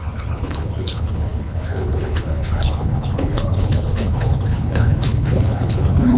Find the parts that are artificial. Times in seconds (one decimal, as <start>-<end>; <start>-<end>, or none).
0.0-6.2